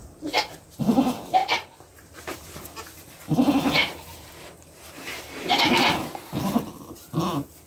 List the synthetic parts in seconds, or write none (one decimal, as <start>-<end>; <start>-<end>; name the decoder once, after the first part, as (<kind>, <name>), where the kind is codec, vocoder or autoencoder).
1.4-2.4 (vocoder, BigVGAN v2); 3.8-5.9